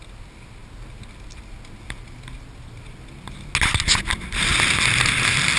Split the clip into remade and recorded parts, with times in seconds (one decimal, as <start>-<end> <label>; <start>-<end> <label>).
0.0-5.6 recorded